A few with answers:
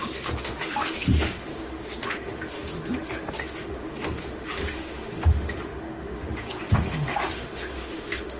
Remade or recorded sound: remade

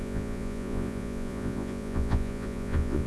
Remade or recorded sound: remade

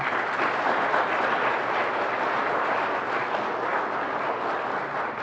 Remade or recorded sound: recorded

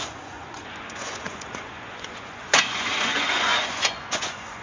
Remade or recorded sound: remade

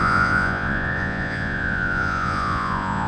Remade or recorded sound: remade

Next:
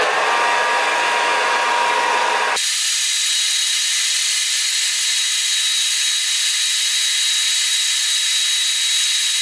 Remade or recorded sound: recorded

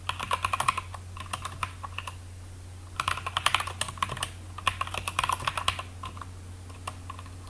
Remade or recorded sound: recorded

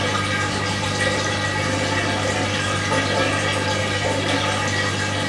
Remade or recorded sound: recorded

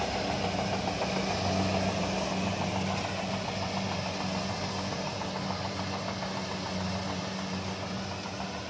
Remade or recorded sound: recorded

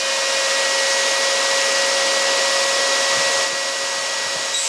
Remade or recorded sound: recorded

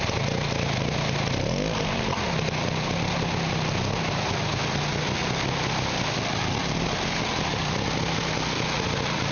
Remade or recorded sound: recorded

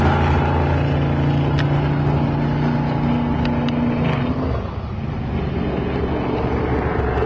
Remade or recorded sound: recorded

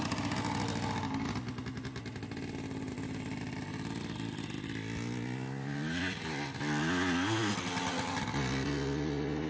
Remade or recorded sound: recorded